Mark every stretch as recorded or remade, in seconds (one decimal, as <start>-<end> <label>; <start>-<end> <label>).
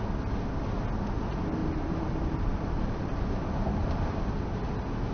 0.0-1.6 recorded; 1.6-3.3 remade; 3.3-5.1 recorded